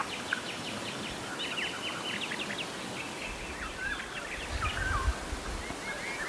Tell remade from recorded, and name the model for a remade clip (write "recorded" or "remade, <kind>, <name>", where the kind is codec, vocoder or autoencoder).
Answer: recorded